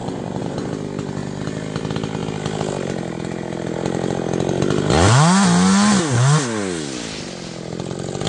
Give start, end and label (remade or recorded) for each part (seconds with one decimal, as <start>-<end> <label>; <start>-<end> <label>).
0.0-0.7 remade; 0.7-8.3 recorded